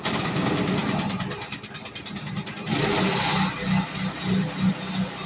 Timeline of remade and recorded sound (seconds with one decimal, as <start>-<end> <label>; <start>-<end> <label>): 0.0-5.3 recorded